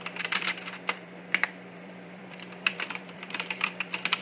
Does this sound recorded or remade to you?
remade